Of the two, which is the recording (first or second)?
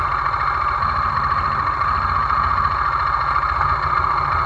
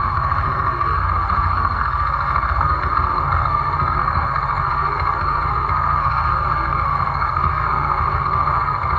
first